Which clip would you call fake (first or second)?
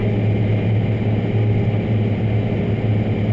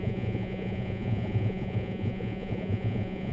second